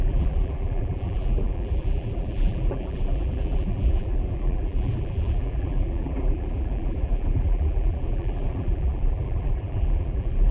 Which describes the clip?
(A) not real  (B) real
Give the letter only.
A